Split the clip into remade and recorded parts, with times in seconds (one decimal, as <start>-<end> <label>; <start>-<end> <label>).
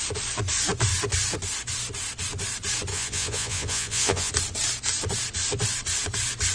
0.0-2.9 recorded; 2.9-4.3 remade; 4.3-6.5 recorded